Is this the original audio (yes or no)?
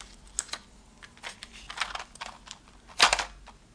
yes